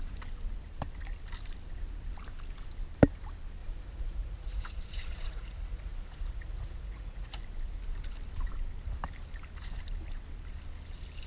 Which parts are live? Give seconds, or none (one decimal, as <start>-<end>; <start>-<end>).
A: 0.0-3.6; 7.4-11.3